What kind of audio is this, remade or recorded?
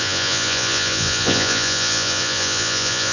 remade